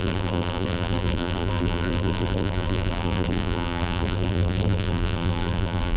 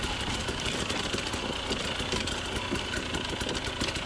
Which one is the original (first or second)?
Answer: second